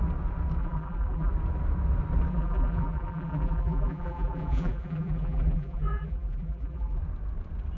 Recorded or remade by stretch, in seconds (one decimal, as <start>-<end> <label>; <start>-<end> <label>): 0.0-0.6 recorded; 0.6-1.3 remade; 1.3-2.3 recorded; 2.3-7.0 remade; 7.0-7.8 recorded